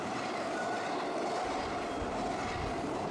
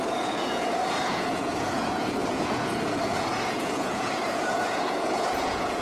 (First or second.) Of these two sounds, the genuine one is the first